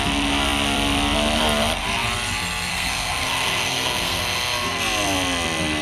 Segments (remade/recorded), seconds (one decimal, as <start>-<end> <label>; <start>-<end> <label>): 0.0-2.7 recorded; 2.7-4.2 remade; 4.2-5.8 recorded